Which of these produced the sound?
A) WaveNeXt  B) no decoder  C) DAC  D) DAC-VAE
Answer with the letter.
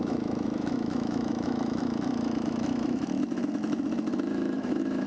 D